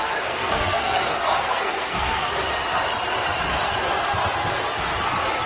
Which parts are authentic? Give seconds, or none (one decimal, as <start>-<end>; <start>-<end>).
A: 2.3-5.5